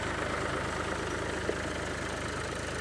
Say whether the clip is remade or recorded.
recorded